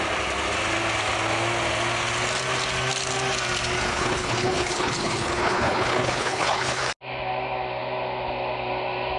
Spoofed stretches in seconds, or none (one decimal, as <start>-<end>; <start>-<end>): 3.9-6.8